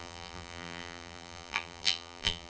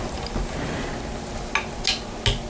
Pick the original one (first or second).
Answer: second